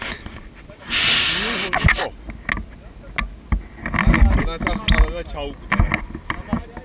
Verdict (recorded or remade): recorded